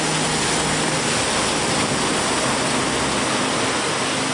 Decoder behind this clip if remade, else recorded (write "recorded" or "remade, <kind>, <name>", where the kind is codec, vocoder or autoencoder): recorded